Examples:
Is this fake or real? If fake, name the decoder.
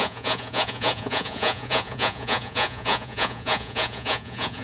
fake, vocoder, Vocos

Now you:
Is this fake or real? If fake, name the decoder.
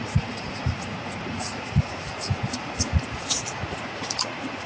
fake, vocoder, Vocos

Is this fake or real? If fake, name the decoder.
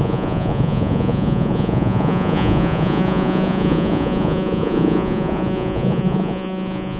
fake, vocoder, Vocos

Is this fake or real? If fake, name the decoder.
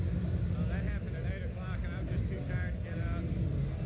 real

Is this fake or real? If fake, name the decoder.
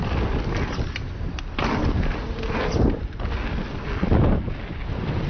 real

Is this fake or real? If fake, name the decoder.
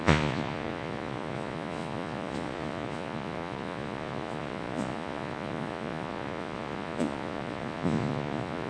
fake, vocoder, Vocos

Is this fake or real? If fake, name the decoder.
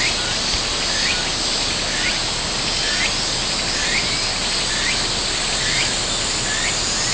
real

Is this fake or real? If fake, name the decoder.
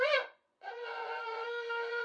fake, vocoder, Vocos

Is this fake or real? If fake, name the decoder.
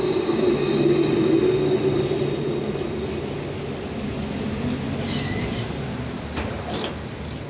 real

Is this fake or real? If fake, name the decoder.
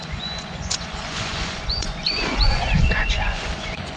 fake, vocoder, Vocos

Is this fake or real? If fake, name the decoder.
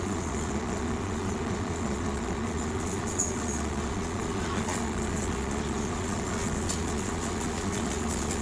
fake, vocoder, Vocos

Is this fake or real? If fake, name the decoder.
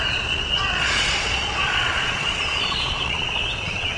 fake, vocoder, Vocos